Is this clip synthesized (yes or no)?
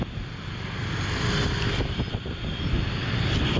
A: no